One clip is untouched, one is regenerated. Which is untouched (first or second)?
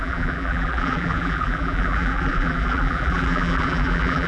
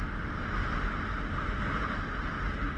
second